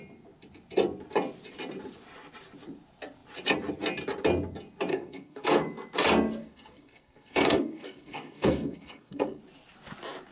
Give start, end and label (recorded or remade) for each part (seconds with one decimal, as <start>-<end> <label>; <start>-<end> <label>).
0.0-4.9 recorded; 4.9-5.6 remade; 5.6-6.4 recorded; 6.4-9.4 remade; 9.4-10.3 recorded